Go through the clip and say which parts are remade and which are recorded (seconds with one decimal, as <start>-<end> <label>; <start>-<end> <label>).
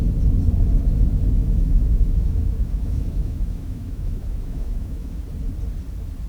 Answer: 0.0-1.4 recorded; 1.4-5.2 remade; 5.2-6.3 recorded